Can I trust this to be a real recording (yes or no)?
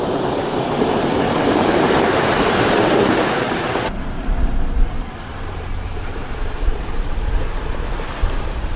no